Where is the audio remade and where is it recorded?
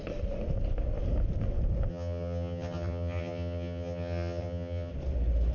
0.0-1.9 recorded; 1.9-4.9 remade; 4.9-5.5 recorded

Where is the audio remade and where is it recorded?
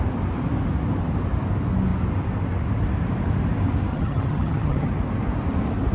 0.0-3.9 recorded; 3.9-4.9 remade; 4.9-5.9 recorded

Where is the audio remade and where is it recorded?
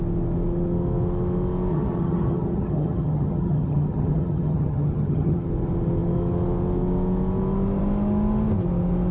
0.0-1.7 recorded; 1.7-5.5 remade; 5.5-9.1 recorded